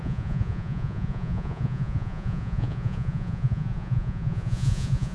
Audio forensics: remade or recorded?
remade